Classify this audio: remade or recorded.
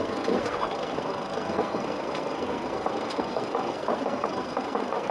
remade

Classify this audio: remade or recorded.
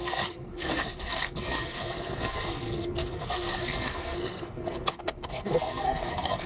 remade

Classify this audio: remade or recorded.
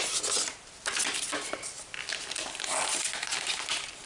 recorded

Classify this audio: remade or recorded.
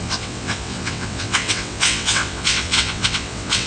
remade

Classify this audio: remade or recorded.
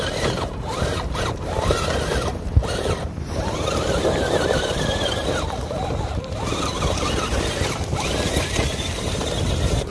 remade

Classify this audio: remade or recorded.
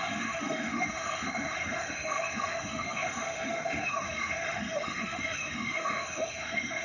remade